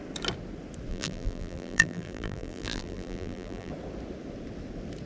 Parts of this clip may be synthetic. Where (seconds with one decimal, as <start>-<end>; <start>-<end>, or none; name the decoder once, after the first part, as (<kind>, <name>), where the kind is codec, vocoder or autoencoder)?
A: 0.9-3.7 (vocoder, BigVGAN v2)